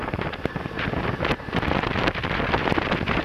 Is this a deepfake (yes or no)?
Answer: yes